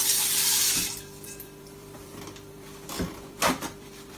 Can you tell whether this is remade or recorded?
remade